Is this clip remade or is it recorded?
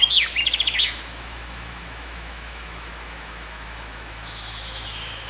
remade